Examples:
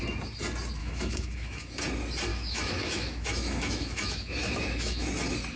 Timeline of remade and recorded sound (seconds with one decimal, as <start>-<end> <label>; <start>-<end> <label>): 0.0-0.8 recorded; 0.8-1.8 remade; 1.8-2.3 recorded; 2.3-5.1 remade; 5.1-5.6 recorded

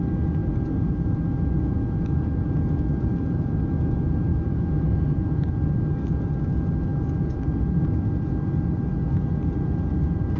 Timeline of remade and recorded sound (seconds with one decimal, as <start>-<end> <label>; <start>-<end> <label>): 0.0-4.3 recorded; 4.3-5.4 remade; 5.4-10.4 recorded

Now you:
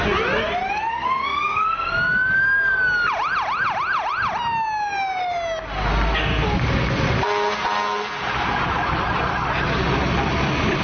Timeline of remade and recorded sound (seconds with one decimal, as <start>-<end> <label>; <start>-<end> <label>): 0.0-0.9 recorded; 0.9-1.9 remade; 1.9-10.8 recorded

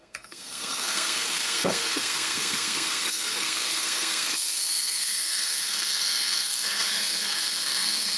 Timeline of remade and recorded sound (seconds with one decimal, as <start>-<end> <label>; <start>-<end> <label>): 0.0-8.2 remade